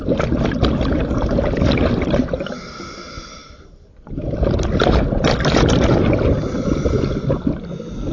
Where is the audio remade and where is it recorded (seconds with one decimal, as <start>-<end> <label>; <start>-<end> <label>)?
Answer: 0.0-8.1 recorded